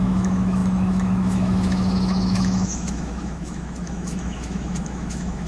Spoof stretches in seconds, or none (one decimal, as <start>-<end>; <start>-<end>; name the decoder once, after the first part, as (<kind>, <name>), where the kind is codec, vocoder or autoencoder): 0.0-5.5 (autoencoder, DAC-VAE)